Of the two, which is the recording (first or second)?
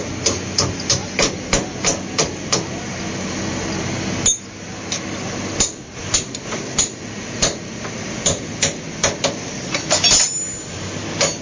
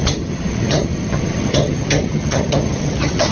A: first